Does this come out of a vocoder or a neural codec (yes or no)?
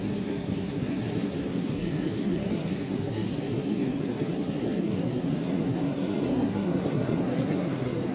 yes